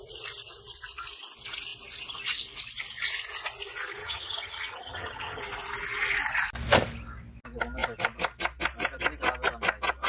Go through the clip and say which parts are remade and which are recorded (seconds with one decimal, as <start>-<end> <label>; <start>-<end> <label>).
0.0-4.0 recorded; 4.0-5.4 remade; 5.4-10.1 recorded